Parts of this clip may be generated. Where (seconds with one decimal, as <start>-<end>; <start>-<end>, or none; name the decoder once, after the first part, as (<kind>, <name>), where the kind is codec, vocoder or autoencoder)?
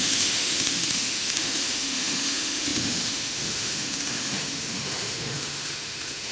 0.0-6.3 (autoencoder, DAC-VAE)